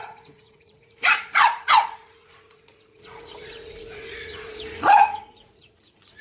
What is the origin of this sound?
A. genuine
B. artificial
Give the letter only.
B